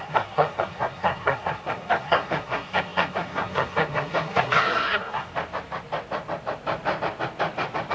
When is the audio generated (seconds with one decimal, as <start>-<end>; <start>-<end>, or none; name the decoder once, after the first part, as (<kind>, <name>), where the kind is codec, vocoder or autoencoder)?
0.0-5.3 (codec, SNAC)